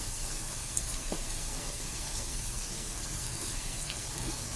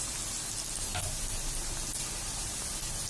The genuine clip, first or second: second